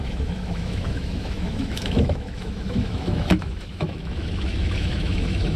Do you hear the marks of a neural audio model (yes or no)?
yes